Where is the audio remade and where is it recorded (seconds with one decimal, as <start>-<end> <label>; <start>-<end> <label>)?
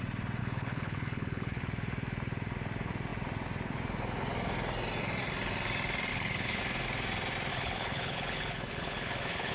0.0-0.4 recorded; 0.4-1.6 remade; 1.6-6.1 recorded; 6.1-6.6 remade; 6.6-7.5 recorded; 7.5-9.5 remade